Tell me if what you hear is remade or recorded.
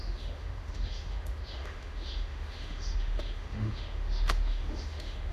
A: remade